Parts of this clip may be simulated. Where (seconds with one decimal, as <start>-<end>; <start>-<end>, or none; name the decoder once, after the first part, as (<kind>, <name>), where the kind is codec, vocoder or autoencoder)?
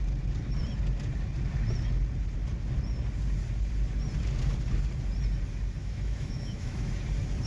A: 5.8-6.9 (autoencoder, DAC-VAE)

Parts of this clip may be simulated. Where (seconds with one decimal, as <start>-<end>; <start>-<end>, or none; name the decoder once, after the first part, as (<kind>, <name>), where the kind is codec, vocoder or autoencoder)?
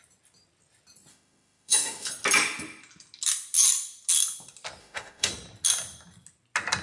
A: 1.1-2.1 (autoencoder, DAC-VAE); 4.8-5.3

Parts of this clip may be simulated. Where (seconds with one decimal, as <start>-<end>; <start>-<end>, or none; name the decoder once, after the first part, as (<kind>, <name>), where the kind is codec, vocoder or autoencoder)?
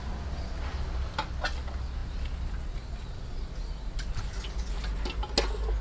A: none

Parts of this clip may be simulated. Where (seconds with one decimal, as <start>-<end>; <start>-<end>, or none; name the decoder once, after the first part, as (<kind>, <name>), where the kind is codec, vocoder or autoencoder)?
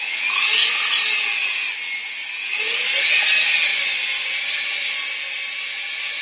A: none